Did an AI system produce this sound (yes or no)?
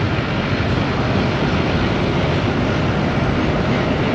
no